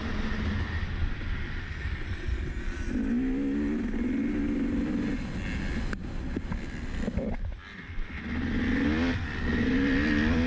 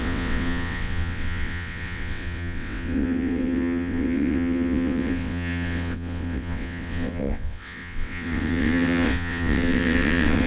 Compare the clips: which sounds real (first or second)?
first